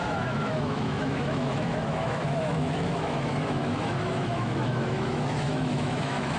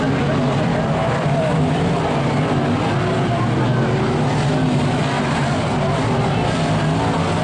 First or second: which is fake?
first